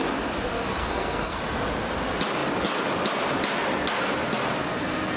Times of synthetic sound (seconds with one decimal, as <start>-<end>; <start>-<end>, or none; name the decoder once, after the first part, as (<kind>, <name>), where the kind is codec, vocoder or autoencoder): 0.8-1.4 (codec, SNAC)